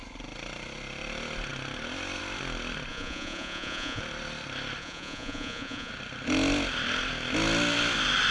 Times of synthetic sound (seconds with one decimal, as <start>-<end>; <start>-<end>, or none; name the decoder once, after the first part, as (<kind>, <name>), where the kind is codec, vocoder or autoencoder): 2.9-4.0 (vocoder, Vocos); 4.8-5.9